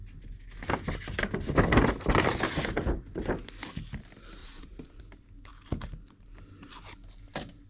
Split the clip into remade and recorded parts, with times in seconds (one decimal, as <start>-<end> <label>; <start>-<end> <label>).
0.0-4.4 recorded; 4.4-5.0 remade; 5.0-7.7 recorded